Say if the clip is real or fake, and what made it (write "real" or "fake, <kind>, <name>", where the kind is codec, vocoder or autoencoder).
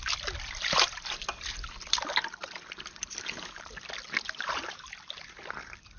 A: real